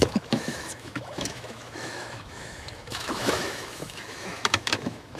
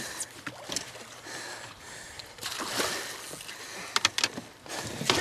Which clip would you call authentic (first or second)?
second